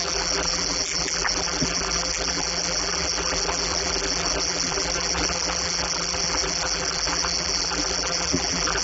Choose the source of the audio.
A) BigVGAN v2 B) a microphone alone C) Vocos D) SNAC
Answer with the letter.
A